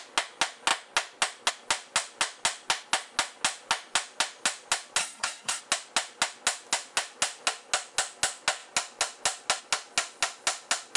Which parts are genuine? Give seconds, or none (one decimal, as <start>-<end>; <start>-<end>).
0.0-5.0; 5.6-11.0